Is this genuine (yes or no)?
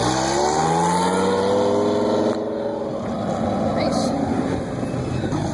yes